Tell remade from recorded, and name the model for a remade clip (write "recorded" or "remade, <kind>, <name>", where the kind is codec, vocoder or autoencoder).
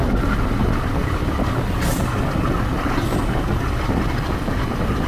recorded